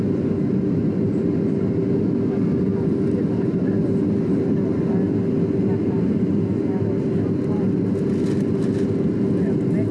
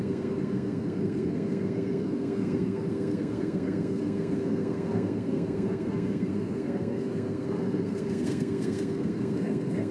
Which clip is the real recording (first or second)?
first